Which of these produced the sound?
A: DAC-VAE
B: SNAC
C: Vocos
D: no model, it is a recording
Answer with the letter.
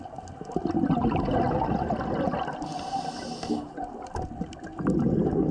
D